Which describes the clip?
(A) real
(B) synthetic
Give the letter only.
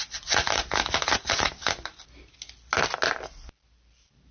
A